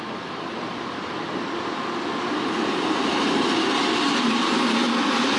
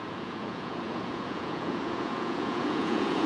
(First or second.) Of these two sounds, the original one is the first